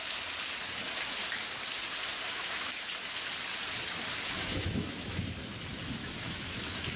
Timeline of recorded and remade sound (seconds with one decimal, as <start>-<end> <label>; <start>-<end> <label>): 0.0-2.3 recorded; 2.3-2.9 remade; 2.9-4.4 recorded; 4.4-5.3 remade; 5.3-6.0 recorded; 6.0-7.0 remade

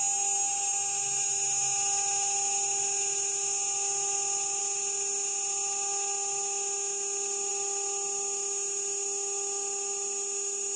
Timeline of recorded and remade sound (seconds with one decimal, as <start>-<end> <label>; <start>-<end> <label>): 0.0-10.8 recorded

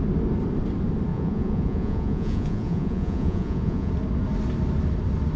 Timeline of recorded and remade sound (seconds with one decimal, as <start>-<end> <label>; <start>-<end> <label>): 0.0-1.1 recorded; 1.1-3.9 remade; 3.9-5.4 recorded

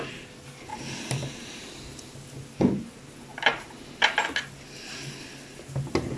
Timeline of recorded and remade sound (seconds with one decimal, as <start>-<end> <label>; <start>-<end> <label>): 0.0-0.7 recorded; 0.7-1.7 remade; 1.7-3.3 recorded; 3.3-4.1 remade; 4.1-6.2 recorded